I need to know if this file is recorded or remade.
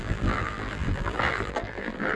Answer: remade